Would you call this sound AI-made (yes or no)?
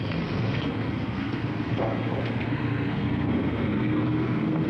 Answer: yes